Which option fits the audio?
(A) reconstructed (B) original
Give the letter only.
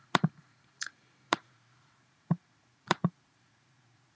A